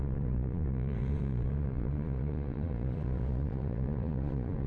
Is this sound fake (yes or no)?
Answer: yes